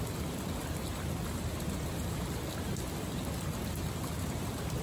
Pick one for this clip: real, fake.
real